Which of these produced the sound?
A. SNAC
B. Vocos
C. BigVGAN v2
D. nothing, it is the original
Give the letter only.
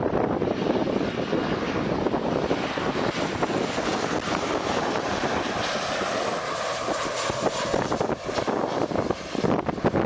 D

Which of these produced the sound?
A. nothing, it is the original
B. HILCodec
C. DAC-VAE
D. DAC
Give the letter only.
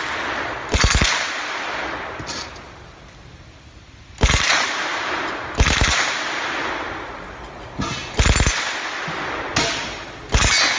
A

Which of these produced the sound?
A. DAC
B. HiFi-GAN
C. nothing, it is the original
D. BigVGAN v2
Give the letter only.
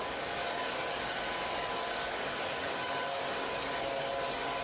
A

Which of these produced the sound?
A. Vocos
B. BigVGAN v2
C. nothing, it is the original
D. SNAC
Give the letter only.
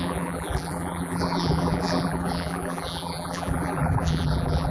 B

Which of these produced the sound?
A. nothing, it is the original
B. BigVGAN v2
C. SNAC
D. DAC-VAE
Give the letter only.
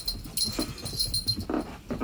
A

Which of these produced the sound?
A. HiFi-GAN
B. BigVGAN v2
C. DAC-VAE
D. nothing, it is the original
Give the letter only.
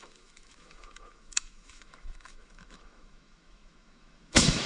C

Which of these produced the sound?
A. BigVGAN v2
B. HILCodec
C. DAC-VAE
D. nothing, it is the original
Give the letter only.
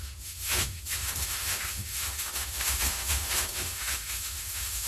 C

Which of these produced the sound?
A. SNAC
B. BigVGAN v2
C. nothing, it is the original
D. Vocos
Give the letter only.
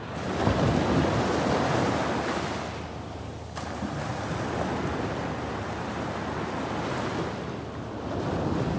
C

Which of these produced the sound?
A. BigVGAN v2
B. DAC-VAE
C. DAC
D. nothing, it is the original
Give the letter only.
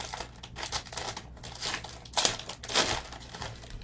D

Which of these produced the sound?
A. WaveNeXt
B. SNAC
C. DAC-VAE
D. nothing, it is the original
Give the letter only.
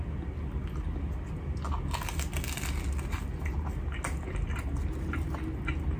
D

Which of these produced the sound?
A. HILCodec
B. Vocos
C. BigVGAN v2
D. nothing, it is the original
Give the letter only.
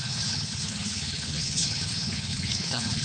A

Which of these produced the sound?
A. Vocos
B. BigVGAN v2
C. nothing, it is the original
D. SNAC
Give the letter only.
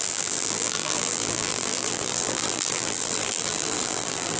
B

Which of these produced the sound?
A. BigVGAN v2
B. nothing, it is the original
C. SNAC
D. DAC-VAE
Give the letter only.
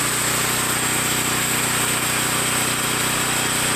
B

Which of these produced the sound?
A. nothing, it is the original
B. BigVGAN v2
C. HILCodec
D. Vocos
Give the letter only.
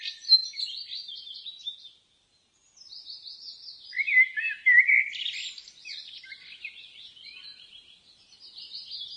A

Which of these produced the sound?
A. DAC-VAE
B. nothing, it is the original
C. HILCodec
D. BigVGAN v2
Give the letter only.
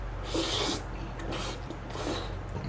B